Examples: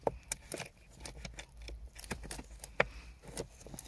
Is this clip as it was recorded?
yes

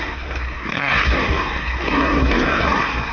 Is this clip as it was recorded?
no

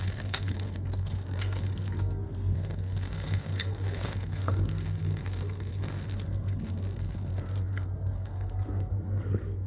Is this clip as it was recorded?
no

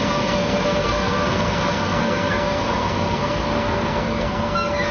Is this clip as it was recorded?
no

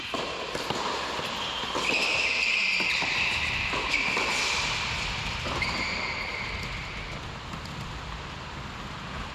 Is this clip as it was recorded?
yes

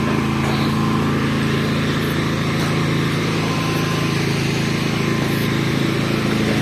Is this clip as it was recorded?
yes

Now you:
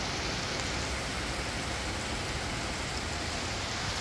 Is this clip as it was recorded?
yes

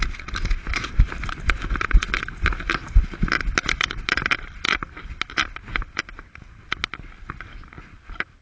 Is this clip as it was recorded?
yes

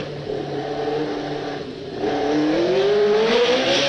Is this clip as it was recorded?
yes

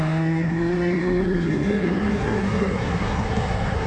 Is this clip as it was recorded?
no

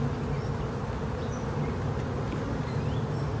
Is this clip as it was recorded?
yes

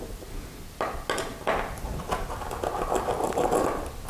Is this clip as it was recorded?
yes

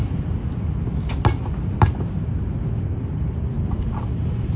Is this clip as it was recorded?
yes